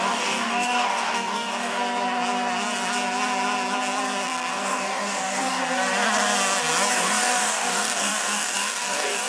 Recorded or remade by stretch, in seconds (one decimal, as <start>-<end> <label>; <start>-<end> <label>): 0.0-1.8 remade; 1.8-4.5 recorded; 4.5-5.6 remade; 5.6-6.9 recorded; 6.9-9.3 remade